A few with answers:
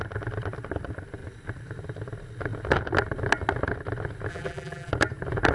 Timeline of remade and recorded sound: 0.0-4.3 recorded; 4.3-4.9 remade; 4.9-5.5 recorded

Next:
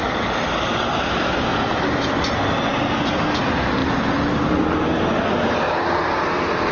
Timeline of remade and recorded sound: 0.0-0.5 remade; 0.5-1.5 recorded; 1.5-2.0 remade; 2.0-3.8 recorded; 3.8-6.7 remade

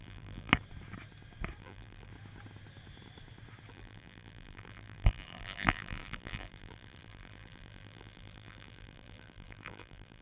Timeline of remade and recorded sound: 0.0-0.5 remade; 0.5-1.6 recorded; 1.6-2.1 remade; 2.1-3.7 recorded; 3.7-10.2 remade

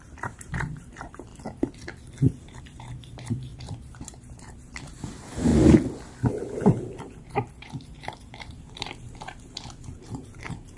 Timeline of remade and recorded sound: 0.0-1.3 remade; 1.3-2.6 recorded; 2.6-5.5 remade; 5.5-7.0 recorded; 7.0-10.8 remade

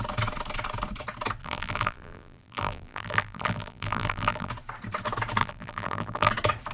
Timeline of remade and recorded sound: 0.0-1.4 recorded; 1.4-4.5 remade; 4.5-5.4 recorded; 5.4-6.3 remade; 6.3-6.7 recorded

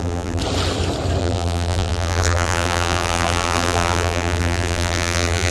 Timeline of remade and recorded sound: 0.0-0.4 remade; 0.4-1.2 recorded; 1.2-5.5 remade

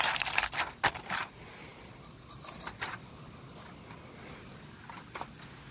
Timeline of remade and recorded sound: 0.0-5.7 recorded